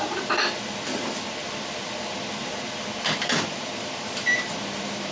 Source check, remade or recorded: remade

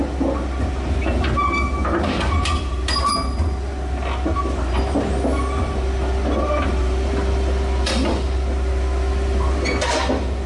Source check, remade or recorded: recorded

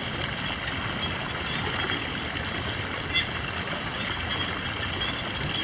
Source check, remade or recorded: recorded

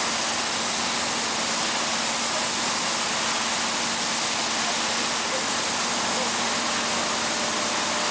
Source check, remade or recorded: recorded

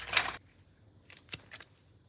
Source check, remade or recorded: recorded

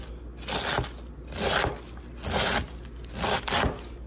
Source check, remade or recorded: recorded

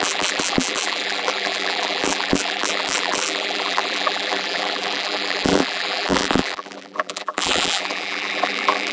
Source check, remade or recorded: remade